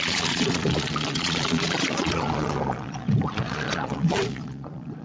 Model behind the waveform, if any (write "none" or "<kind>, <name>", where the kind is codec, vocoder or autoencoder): vocoder, Vocos